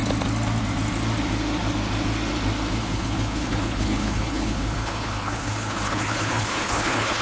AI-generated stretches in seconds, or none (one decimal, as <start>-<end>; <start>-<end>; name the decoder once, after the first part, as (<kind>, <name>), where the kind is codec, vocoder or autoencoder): 2.8-7.2 (codec, HILCodec)